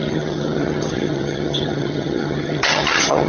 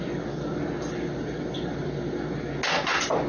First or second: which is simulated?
first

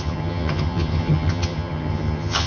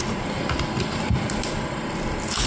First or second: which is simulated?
first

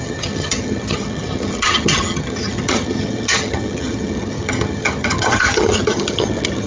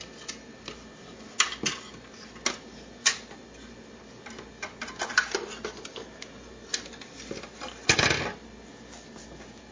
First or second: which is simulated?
first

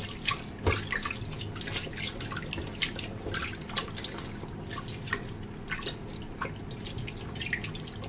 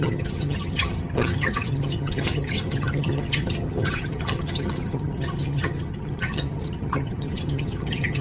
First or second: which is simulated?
second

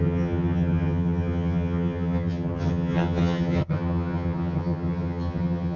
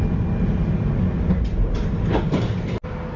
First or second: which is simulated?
first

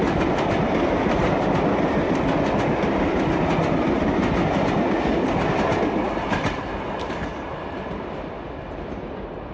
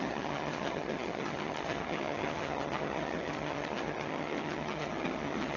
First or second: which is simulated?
second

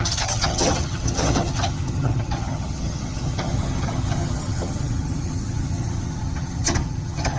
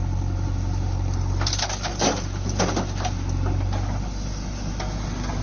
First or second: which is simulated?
first